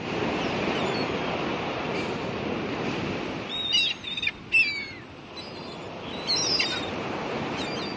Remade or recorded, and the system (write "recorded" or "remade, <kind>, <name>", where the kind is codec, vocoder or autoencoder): recorded